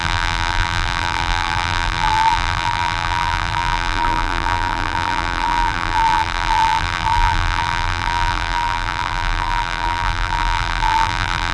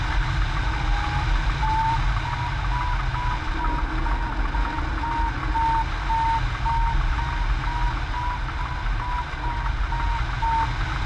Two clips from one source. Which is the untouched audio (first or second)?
second